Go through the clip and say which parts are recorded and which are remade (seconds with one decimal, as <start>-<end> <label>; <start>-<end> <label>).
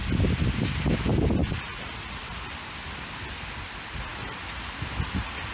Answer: 0.0-1.4 recorded; 1.4-2.5 remade; 2.5-5.5 recorded